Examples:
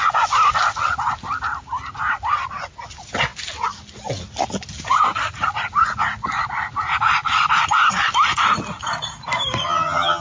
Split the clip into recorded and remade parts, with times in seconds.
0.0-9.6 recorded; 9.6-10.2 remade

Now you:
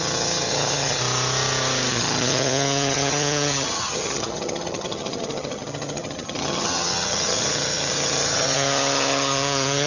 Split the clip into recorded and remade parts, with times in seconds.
0.0-1.0 remade; 1.0-1.9 recorded; 1.9-9.9 remade